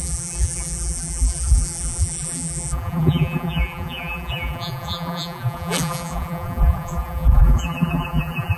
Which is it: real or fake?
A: fake